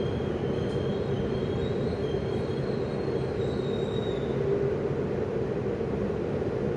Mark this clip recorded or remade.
recorded